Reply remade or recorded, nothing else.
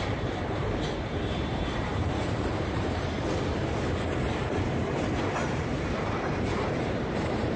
remade